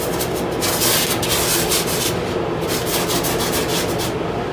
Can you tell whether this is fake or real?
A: real